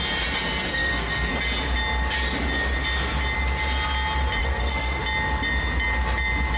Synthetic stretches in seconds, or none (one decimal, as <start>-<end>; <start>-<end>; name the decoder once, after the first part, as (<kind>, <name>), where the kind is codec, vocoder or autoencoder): 0.7-1.3 (codec, SNAC); 4.4-5.0